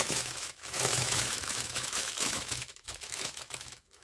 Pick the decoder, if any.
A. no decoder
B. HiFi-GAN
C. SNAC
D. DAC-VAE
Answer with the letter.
D